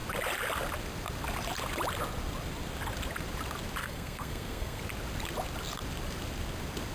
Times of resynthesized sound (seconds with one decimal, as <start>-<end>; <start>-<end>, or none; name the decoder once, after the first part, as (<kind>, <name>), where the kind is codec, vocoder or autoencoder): 3.8-4.8 (codec, SNAC)